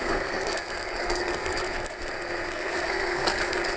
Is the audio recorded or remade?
remade